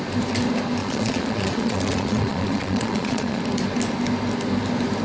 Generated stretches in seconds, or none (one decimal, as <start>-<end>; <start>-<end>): 0.8-3.4